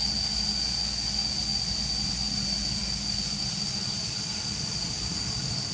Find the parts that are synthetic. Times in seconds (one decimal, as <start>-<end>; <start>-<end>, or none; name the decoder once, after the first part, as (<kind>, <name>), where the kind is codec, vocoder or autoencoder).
none